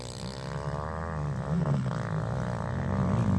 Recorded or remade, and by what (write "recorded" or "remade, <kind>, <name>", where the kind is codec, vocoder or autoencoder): recorded